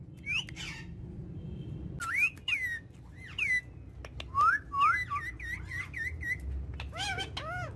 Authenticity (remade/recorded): recorded